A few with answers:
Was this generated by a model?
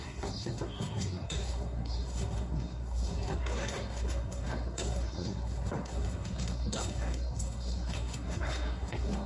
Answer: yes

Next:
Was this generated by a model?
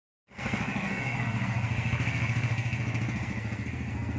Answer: yes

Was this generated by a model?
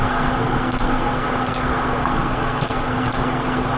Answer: yes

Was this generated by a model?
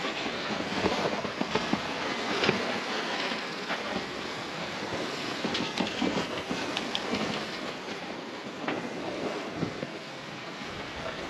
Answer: yes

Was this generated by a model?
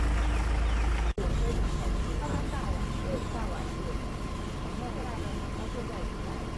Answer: no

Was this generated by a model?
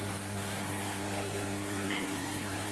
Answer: yes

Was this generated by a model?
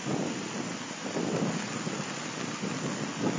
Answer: no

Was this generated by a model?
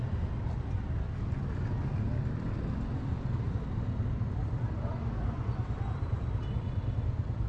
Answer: no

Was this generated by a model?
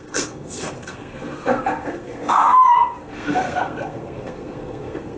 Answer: yes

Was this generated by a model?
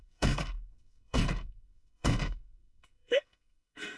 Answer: yes